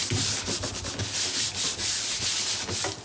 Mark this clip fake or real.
real